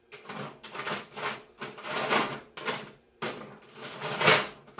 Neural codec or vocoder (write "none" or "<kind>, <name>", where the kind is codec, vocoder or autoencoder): none